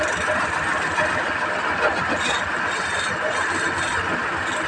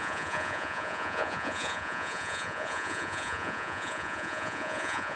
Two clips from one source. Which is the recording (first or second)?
first